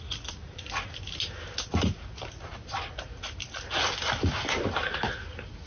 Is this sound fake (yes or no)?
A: no